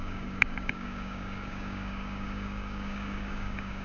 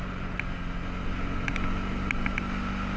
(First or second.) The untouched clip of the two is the second